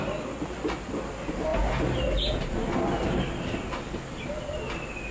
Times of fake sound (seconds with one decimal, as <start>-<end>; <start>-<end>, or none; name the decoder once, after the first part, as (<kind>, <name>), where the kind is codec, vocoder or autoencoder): none